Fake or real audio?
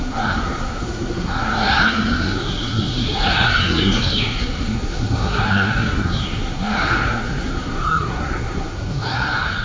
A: fake